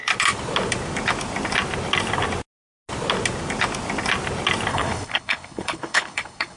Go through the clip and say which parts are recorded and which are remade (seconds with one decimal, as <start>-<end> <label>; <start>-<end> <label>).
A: 0.0-4.7 recorded; 4.7-6.6 remade